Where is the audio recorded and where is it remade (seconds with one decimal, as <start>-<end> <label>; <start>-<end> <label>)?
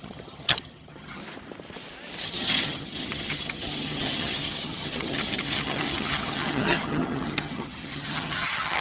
0.0-1.2 remade; 1.2-2.2 recorded; 2.2-8.8 remade